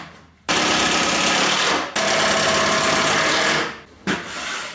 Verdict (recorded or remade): recorded